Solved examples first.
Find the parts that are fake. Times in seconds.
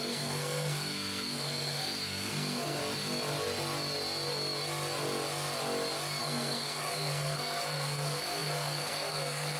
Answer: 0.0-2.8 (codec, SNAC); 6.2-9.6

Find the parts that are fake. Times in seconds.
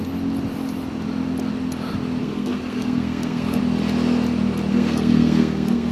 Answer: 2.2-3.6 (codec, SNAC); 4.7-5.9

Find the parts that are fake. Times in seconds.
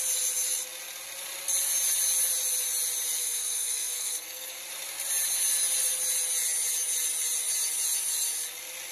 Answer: 3.2-4.6 (codec, SNAC)